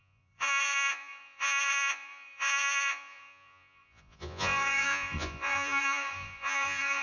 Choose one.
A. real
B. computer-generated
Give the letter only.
B